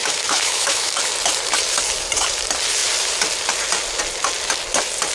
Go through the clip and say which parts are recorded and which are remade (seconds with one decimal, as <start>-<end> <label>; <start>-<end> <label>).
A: 0.0-1.0 remade; 1.0-5.1 recorded